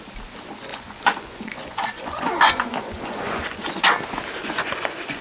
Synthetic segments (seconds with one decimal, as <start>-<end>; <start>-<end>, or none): 0.7-3.8; 4.4-5.2